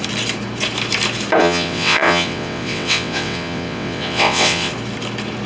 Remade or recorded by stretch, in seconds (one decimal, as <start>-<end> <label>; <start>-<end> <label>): 0.0-1.4 recorded; 1.4-4.7 remade; 4.7-5.5 recorded

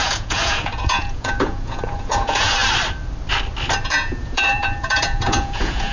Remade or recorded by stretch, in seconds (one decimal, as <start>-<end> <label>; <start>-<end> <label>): 0.0-2.6 remade; 2.6-3.8 recorded; 3.8-5.9 remade

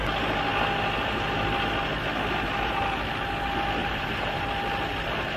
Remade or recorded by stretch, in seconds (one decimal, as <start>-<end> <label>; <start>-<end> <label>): 0.0-3.8 recorded; 3.8-4.4 remade; 4.4-5.4 recorded